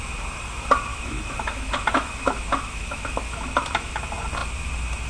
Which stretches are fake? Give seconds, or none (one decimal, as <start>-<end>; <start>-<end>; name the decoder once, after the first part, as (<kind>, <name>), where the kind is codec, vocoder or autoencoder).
0.9-4.0 (autoencoder, DAC-VAE)